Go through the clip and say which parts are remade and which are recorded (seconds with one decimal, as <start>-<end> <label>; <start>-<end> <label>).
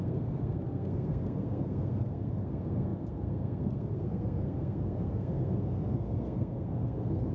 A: 0.0-7.3 remade